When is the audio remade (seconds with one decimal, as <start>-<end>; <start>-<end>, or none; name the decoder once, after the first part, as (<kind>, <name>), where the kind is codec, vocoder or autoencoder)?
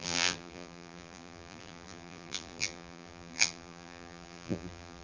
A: 0.0-5.0 (vocoder, BigVGAN v2)